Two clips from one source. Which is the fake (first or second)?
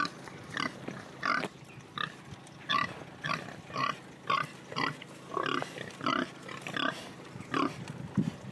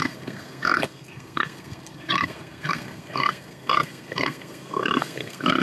second